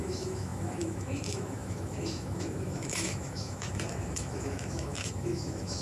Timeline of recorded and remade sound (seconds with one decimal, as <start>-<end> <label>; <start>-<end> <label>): 0.0-5.8 remade